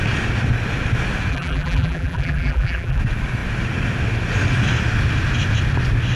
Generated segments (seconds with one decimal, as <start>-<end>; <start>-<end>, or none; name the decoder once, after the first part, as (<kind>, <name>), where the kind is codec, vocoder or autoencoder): 1.3-3.0 (vocoder, BigVGAN v2)